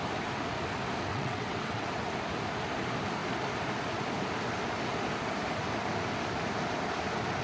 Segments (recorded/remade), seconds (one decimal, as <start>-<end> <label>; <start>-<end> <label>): 0.0-1.1 recorded; 1.1-1.9 remade; 1.9-7.4 recorded